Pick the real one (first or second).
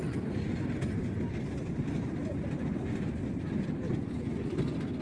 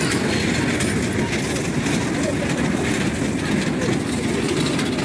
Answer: second